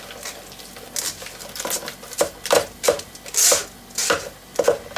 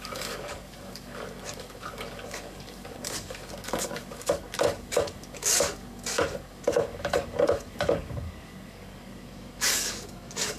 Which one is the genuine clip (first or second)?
first